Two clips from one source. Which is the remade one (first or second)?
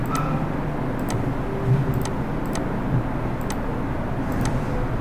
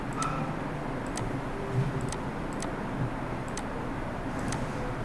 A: second